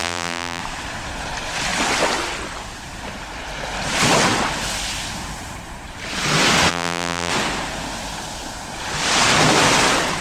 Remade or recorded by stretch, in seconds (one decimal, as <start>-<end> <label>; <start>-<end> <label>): 0.0-0.6 remade; 0.6-6.7 recorded; 6.7-7.3 remade; 7.3-10.2 recorded